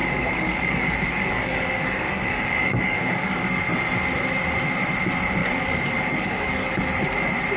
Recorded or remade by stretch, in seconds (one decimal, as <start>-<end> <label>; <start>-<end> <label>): 0.0-3.6 remade; 3.6-5.4 recorded; 5.4-6.7 remade; 6.7-7.6 recorded